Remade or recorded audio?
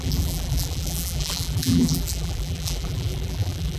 remade